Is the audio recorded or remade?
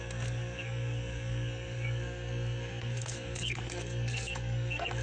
remade